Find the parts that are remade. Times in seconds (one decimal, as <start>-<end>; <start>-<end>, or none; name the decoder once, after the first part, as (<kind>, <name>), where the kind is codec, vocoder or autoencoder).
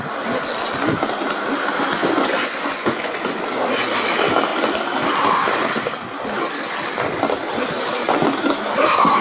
2.0-3.2 (vocoder, Vocos)